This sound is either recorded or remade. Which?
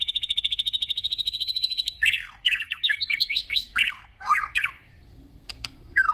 remade